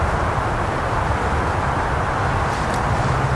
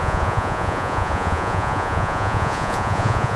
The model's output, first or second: second